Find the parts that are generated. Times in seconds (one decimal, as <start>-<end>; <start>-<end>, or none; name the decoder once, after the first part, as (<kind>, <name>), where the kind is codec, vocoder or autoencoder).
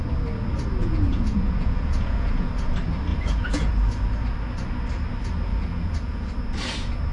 0.8-2.5 (vocoder, Vocos); 3.1-3.7; 5.5-6.3